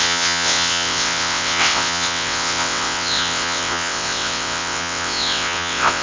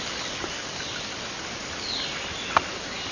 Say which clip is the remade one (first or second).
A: first